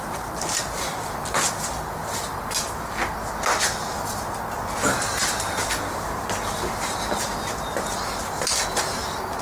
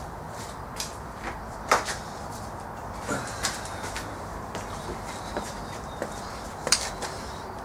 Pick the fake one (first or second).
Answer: second